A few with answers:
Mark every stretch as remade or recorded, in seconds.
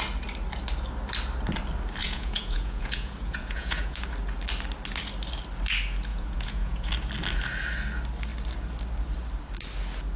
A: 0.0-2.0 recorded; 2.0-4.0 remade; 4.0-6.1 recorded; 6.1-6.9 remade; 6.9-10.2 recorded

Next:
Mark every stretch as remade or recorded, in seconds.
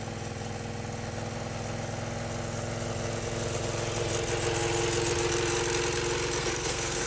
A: 0.0-6.4 recorded; 6.4-7.1 remade